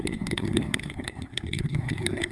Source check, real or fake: fake